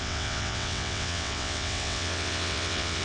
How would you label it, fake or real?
fake